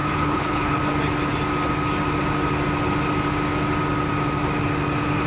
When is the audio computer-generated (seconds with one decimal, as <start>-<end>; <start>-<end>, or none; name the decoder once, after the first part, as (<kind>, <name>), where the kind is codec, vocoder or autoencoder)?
0.0-0.8 (codec, HILCodec)